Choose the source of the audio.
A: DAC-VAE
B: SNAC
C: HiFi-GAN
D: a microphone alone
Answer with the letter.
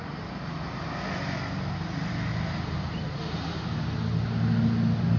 D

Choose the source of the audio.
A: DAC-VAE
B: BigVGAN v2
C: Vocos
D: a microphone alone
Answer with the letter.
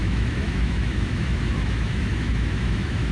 A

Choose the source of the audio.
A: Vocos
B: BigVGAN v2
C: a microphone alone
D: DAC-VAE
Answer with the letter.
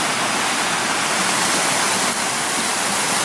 C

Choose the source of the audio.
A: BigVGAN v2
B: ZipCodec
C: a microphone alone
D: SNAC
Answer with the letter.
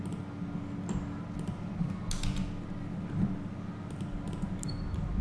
C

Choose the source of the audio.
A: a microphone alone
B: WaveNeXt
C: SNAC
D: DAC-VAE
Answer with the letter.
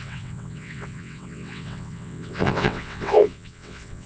B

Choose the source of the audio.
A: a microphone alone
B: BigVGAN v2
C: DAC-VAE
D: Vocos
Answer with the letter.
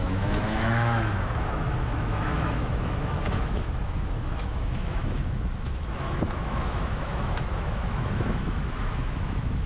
C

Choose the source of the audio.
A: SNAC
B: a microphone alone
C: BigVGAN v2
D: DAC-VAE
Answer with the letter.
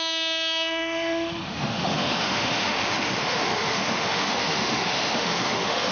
D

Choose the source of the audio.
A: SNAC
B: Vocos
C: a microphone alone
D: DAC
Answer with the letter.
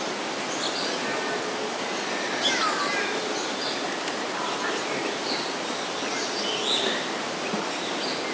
C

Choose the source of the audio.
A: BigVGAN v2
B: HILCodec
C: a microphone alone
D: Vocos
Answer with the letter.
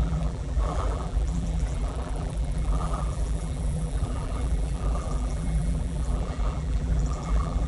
A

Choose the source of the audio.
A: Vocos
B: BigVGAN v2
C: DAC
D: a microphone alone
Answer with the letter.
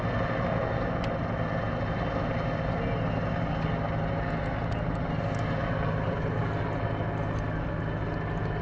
D